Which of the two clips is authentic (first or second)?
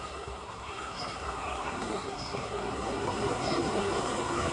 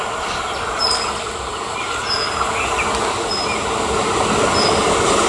second